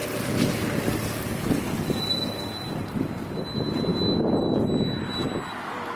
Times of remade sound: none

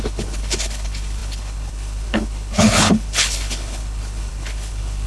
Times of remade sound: 0.0-5.1

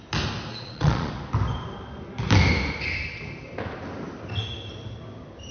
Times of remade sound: 0.5-1.1

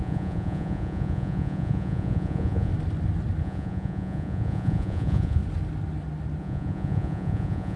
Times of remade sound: 0.0-2.7; 3.4-5.4; 6.4-7.8

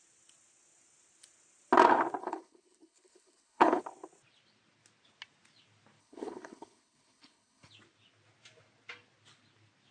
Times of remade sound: 2.2-3.8; 6.0-7.7

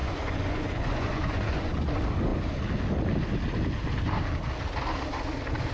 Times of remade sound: 0.0-1.9

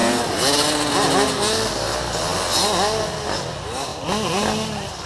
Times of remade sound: none